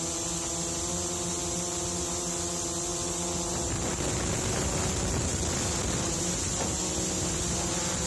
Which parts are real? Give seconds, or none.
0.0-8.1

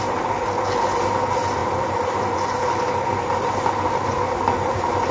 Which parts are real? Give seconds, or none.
0.0-5.1

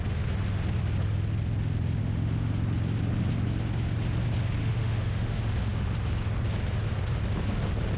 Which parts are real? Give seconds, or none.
0.0-2.0; 2.5-4.6; 5.4-8.0